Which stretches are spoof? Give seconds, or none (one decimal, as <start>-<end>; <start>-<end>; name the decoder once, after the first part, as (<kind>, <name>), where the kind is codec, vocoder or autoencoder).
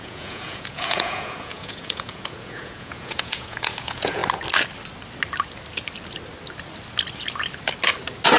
0.0-4.2 (vocoder, Vocos)